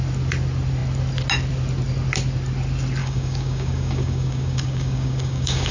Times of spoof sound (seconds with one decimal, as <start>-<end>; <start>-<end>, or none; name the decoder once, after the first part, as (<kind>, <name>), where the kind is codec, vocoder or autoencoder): 3.0-5.7 (codec, DAC)